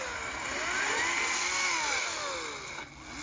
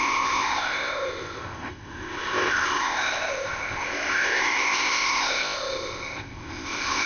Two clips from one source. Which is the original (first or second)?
first